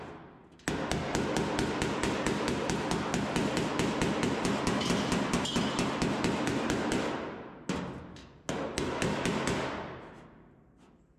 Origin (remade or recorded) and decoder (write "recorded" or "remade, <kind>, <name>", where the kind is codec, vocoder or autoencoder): recorded